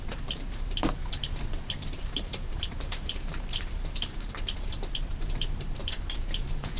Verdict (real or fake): fake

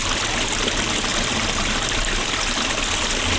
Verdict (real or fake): real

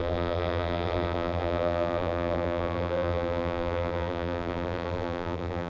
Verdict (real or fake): fake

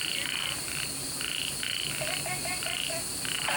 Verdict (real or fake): real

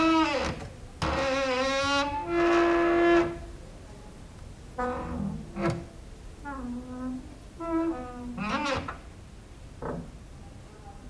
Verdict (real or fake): real